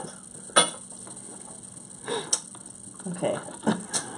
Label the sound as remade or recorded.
recorded